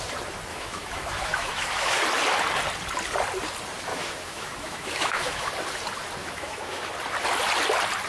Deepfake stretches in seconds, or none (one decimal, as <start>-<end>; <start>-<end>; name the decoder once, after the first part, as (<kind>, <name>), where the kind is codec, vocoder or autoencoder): 0.5-2.0 (autoencoder, DAC-VAE); 3.9-5.5; 6.2-6.9